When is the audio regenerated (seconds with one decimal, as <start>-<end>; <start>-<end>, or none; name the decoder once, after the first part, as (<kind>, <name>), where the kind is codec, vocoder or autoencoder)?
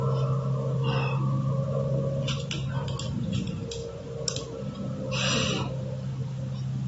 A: none